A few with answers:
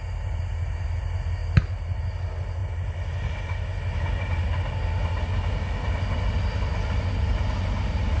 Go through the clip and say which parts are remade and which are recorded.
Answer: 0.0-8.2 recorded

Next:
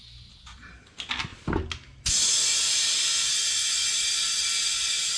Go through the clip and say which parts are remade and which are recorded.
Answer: 0.0-5.2 recorded

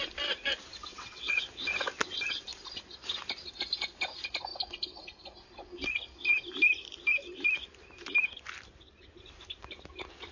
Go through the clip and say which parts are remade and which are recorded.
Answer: 0.0-0.9 recorded; 0.9-1.4 remade; 1.4-10.3 recorded

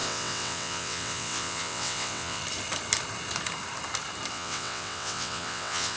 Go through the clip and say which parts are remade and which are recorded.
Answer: 0.0-2.4 remade; 2.4-4.3 recorded; 4.3-6.0 remade

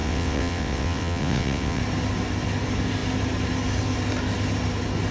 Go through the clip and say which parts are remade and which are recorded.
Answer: 0.0-1.8 remade; 1.8-5.1 recorded

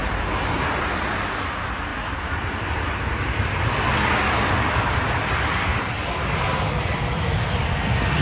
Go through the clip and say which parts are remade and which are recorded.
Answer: 0.0-8.2 recorded

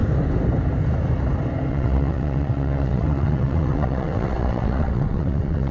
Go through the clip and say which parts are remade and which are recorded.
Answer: 0.0-1.7 recorded; 1.7-5.7 remade